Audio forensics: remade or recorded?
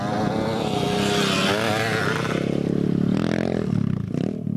recorded